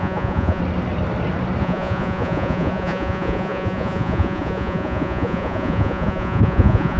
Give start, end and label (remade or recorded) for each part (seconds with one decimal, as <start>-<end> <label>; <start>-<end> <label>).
0.0-0.6 remade; 0.6-1.6 recorded; 1.6-7.0 remade